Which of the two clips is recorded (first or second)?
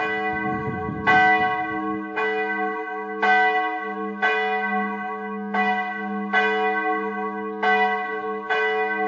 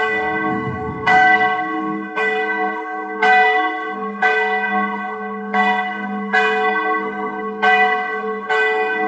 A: first